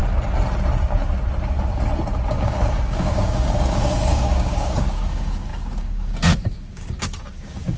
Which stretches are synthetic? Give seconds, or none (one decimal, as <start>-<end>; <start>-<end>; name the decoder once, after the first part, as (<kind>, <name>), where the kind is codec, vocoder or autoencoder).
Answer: 2.3-7.8 (codec, DAC)